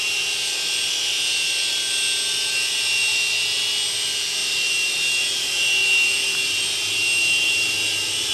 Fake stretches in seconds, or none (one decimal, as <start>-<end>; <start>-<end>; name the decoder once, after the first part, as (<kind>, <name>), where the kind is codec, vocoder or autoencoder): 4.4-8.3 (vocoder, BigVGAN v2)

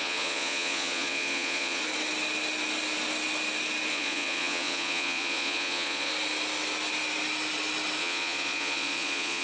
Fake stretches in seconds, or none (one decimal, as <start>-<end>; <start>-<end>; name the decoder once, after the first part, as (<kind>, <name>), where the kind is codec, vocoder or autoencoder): 0.0-1.8 (vocoder, Vocos); 3.9-6.1; 8.0-9.4

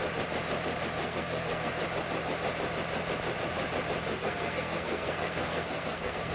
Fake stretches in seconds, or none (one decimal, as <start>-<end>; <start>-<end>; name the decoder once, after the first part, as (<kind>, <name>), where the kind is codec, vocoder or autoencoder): 1.0-1.7 (codec, SNAC); 4.1-6.3